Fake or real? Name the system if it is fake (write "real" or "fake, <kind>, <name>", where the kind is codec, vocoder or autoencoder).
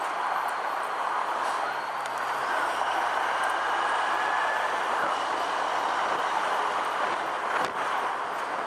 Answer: real